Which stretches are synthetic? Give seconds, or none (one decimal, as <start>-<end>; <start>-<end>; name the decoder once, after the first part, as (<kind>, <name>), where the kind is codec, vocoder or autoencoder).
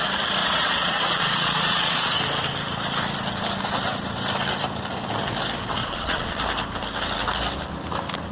0.4-2.2 (vocoder, Vocos); 5.8-6.4